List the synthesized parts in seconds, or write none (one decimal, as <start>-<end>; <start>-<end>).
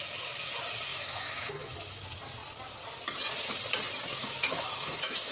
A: 0.9-2.0; 4.2-5.3